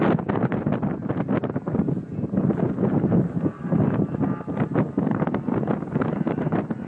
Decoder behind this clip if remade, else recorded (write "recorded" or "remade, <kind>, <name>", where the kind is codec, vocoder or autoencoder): recorded